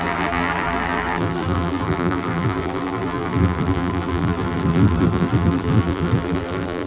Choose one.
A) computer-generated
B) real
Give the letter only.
A